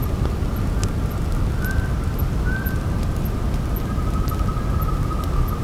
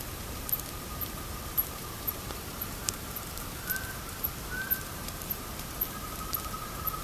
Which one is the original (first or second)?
first